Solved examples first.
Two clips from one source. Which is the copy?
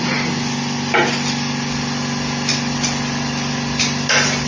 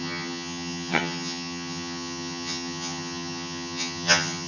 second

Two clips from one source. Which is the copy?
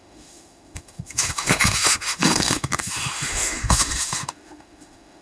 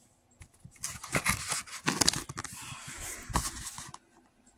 first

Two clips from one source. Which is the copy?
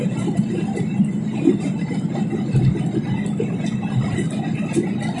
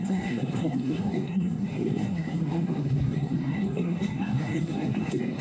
second